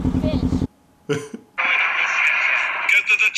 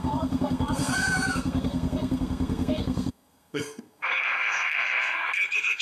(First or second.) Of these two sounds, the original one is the first